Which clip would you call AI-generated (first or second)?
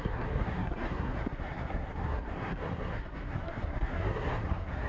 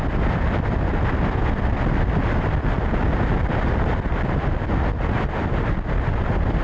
first